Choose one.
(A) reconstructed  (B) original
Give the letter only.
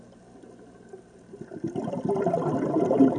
B